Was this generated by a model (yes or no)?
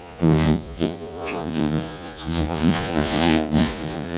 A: yes